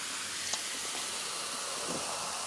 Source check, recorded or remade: recorded